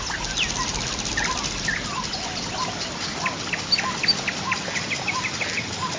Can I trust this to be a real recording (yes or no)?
yes